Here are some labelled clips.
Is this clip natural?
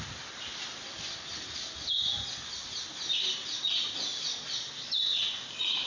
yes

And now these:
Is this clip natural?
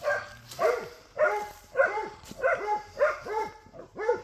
yes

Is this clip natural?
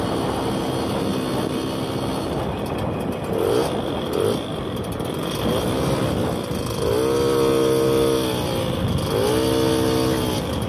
yes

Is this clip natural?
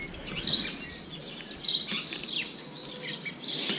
yes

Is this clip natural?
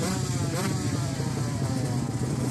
no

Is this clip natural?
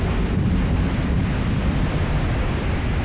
yes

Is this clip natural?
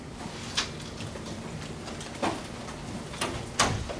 yes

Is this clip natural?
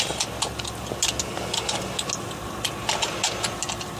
yes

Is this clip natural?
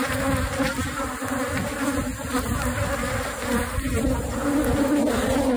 yes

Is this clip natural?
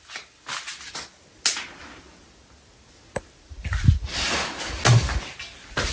yes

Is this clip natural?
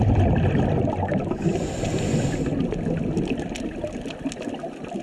yes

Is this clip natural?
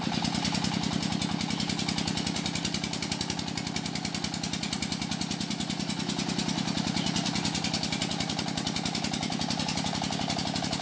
yes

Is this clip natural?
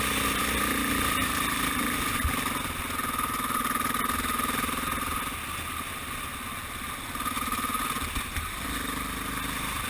yes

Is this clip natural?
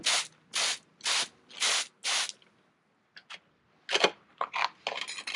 yes